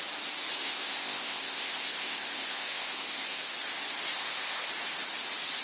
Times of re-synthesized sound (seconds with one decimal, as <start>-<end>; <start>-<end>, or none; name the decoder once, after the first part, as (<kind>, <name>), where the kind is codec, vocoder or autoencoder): 0.6-3.5 (codec, ZipCodec); 4.2-4.7